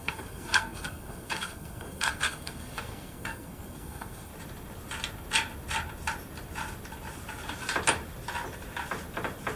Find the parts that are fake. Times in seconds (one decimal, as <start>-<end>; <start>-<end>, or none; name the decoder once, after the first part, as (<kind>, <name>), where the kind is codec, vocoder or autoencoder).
0.0-4.3 (codec, SNAC)